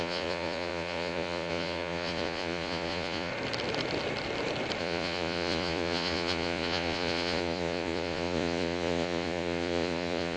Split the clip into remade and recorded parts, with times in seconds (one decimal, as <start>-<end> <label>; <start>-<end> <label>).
0.0-3.3 remade; 3.3-4.8 recorded; 4.8-10.4 remade